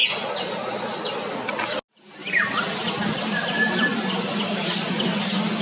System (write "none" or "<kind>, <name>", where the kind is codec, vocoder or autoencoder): none